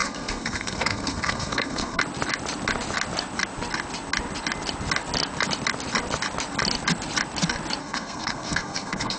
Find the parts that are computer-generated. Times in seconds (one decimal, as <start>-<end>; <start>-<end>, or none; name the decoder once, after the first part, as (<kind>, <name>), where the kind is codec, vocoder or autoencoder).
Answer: 0.0-2.0 (codec, SNAC); 7.8-9.2

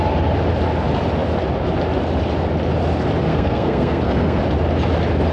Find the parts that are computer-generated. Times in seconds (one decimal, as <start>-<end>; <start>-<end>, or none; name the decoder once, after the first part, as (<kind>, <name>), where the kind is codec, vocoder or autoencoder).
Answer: 3.3-4.4 (codec, SNAC)